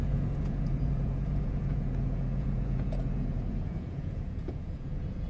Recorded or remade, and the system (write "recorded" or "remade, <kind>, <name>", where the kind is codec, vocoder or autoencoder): remade, vocoder, Vocos